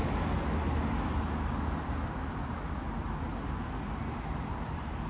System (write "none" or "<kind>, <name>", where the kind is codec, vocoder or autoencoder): none